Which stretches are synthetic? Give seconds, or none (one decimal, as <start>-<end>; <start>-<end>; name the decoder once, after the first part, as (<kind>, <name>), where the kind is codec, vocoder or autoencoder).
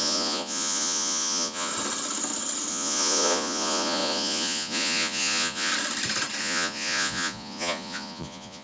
0.0-1.7 (vocoder, Vocos); 2.7-5.7; 6.4-8.6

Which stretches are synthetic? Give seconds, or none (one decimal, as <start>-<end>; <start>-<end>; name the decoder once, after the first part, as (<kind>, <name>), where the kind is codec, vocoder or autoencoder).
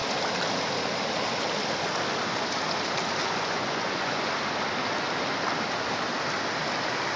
3.2-4.3 (vocoder, Vocos)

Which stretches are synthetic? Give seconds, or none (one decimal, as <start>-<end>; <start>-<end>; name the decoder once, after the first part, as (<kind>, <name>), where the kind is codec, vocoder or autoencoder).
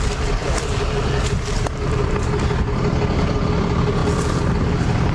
none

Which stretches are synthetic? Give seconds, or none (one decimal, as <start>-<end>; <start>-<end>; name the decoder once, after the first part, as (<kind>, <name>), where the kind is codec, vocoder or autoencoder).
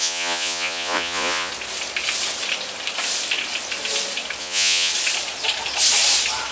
0.0-1.5 (vocoder, Vocos); 4.4-4.9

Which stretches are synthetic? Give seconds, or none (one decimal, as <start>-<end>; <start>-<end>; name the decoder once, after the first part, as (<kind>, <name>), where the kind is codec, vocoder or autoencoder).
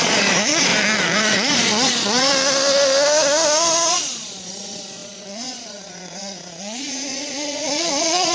0.0-0.7 (vocoder, Vocos); 1.2-2.3; 3.9-8.3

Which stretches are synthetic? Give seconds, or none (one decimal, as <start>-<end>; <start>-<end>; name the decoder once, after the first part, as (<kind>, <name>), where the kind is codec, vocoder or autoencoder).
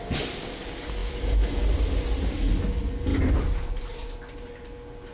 none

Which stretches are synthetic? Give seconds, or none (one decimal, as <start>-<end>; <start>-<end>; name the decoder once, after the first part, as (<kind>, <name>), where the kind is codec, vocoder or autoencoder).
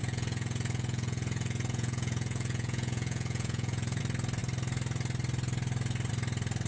0.0-4.0 (vocoder, Vocos)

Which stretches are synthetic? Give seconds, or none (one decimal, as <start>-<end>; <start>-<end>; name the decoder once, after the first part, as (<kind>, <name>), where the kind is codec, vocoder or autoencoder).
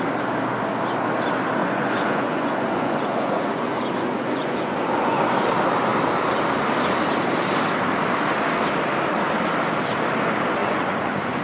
1.6-5.2 (vocoder, Vocos); 10.6-11.4